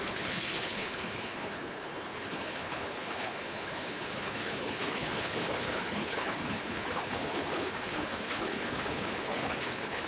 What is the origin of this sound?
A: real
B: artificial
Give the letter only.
B